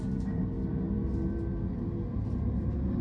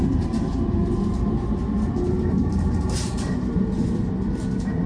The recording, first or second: first